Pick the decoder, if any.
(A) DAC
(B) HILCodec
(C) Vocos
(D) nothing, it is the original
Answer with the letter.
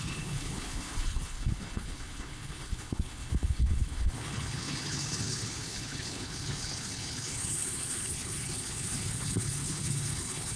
B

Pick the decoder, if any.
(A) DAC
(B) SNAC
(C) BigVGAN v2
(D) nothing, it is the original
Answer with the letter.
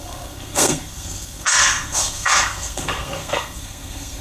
B